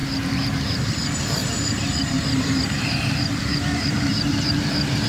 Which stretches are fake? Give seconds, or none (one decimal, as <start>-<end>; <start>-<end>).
0.6-5.1